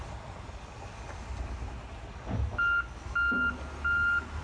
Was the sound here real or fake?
real